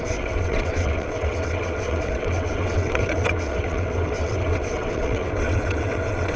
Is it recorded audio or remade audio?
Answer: remade